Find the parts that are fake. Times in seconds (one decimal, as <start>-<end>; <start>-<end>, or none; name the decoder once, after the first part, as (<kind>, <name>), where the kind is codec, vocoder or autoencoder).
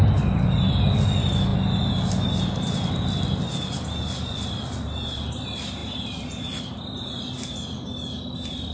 none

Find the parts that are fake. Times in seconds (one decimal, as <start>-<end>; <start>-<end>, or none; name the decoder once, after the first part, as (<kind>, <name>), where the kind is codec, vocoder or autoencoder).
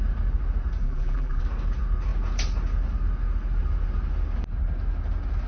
0.8-1.4 (vocoder, BigVGAN v2)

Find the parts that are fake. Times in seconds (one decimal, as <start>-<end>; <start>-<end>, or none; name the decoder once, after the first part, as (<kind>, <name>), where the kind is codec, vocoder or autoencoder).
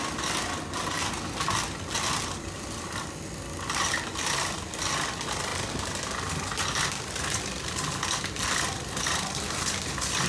none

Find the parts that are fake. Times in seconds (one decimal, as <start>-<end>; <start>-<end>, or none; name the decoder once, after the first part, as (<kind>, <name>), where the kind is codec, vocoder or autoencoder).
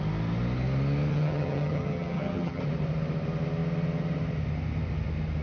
1.1-2.6 (vocoder, HiFi-GAN)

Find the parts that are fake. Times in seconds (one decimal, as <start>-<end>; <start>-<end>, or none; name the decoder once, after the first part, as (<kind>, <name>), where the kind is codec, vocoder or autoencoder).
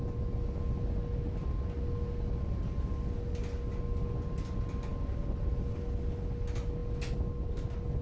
none